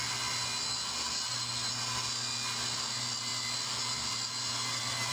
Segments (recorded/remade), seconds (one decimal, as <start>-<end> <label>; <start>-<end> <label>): 0.0-5.1 recorded